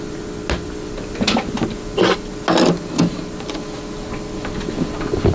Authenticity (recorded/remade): recorded